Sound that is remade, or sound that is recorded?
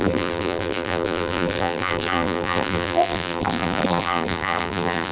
remade